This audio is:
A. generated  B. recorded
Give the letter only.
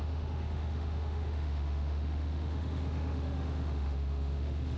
A